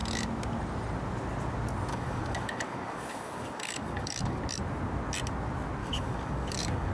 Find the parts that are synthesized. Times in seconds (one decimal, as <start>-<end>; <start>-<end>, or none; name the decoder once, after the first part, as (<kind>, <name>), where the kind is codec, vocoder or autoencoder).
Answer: 1.9-4.4 (codec, DAC); 5.8-6.9